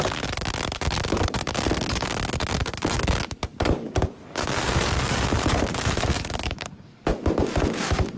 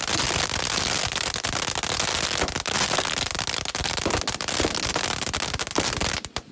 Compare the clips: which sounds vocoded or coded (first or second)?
first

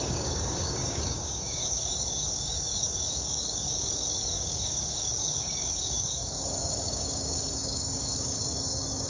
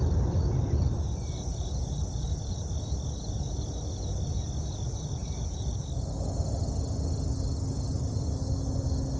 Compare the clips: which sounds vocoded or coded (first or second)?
first